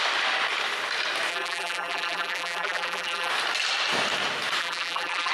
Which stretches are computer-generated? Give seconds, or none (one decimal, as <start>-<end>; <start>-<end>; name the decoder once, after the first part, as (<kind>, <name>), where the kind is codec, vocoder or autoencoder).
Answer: 1.3-3.3 (vocoder, BigVGAN v2); 4.6-5.3